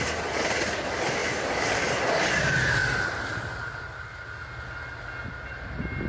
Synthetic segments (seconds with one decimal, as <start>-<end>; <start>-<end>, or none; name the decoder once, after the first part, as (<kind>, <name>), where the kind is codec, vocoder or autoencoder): none